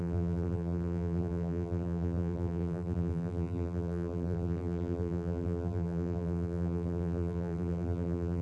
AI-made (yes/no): yes